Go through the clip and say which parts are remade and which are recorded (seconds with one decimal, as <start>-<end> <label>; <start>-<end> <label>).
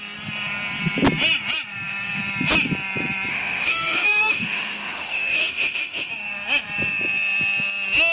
0.0-3.3 recorded; 3.3-6.1 remade; 6.1-8.1 recorded